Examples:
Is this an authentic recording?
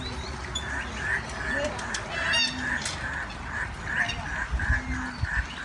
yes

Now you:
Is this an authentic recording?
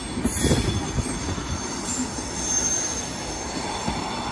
yes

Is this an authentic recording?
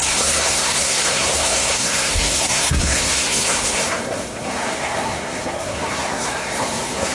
no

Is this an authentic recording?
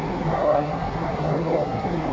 no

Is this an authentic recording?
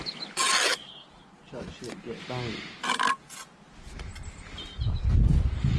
yes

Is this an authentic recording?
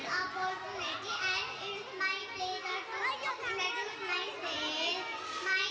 yes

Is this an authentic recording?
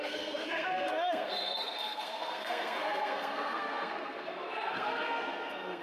no